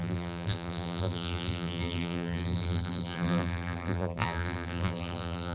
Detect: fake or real fake